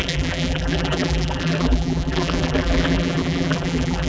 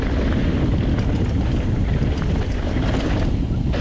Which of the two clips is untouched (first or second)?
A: second